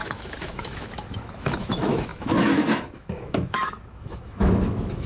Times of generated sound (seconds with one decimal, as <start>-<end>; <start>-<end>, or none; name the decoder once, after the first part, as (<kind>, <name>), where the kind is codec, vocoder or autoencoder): 0.0-5.1 (autoencoder, DAC-VAE)